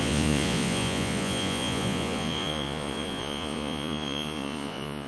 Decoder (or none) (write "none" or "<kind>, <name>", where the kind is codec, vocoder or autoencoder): vocoder, Vocos